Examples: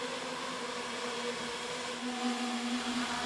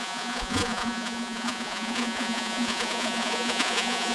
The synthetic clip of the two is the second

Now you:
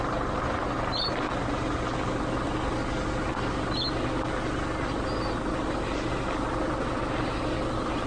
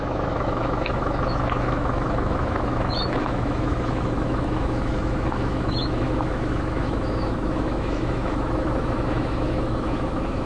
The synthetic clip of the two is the second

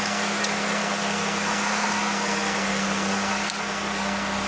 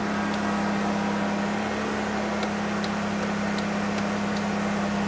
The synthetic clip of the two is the first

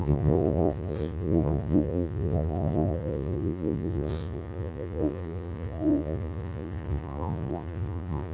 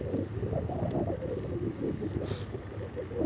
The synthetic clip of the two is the first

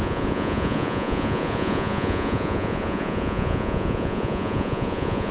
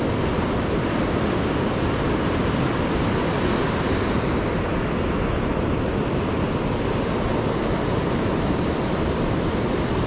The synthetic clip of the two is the first